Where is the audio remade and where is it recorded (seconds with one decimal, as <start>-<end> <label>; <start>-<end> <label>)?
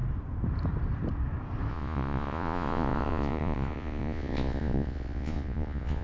0.0-1.7 recorded; 1.7-6.0 remade